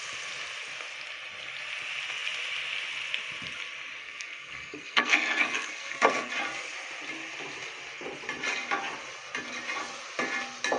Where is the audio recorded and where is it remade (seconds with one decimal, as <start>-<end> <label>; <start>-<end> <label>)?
0.0-4.0 recorded; 4.0-6.3 remade; 6.3-10.8 recorded